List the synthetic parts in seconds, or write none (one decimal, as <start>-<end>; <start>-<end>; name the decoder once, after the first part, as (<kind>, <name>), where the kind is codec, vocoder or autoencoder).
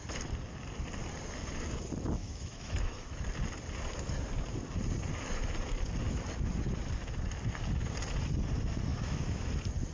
2.2-3.2 (autoencoder, DAC-VAE); 8.9-9.5